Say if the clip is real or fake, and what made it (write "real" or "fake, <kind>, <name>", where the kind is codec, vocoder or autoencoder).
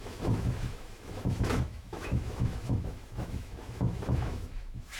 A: fake, autoencoder, DAC-VAE